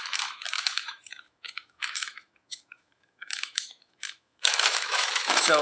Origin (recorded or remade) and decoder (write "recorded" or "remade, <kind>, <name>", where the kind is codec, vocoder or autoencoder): remade, autoencoder, DAC-VAE